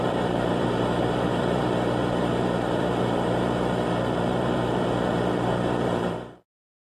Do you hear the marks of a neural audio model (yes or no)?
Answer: yes